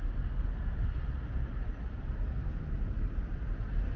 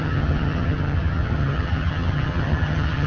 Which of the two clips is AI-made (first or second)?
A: second